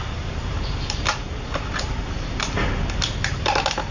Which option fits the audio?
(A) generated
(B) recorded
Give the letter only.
B